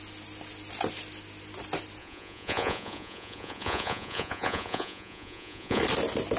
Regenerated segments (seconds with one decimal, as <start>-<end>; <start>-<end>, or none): 2.0-5.8